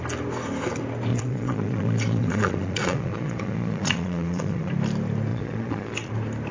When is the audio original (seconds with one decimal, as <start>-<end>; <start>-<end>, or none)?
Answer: 0.0-1.1; 4.7-5.3; 6.1-6.5